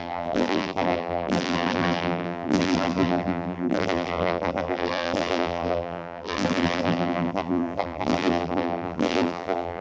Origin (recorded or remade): remade